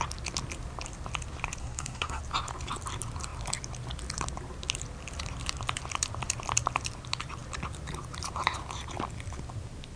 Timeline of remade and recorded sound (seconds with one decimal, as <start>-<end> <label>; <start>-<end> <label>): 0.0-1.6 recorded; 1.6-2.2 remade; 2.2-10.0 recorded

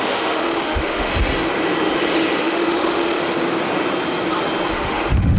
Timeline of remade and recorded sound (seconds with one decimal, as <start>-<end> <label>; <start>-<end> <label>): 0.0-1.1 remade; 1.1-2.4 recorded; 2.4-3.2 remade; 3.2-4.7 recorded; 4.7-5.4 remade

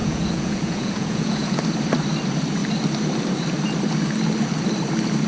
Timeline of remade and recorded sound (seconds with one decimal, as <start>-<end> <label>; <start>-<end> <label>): 0.0-1.6 remade; 1.6-5.3 recorded